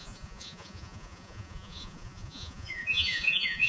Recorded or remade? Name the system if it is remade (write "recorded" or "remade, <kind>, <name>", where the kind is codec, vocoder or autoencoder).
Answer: remade, vocoder, Vocos